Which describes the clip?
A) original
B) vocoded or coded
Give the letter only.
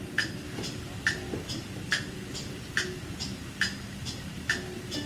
A